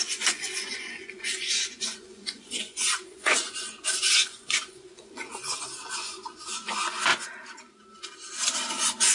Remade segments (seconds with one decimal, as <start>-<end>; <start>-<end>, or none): 0.0-7.1; 8.7-9.1